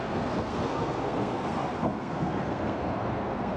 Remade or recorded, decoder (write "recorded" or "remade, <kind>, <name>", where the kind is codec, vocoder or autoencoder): remade, codec, SNAC